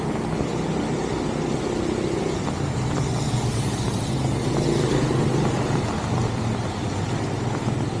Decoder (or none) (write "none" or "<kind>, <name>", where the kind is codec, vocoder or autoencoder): none